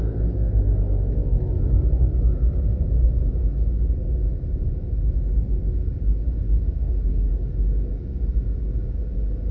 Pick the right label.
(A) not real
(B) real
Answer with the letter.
B